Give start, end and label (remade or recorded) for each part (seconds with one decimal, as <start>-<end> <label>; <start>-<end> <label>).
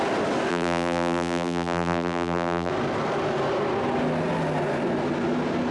0.0-0.5 recorded; 0.5-2.7 remade; 2.7-5.7 recorded